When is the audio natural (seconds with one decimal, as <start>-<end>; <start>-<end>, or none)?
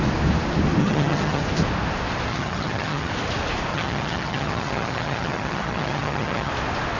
0.0-0.8; 1.4-2.3; 3.1-3.7; 6.5-7.0